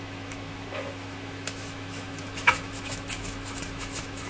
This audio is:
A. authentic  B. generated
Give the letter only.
B